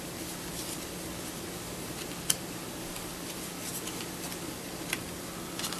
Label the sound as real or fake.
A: real